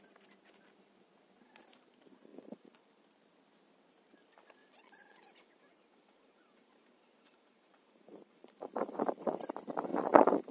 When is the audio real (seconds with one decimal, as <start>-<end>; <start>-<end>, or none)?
0.0-2.3; 2.9-4.6; 9.4-9.9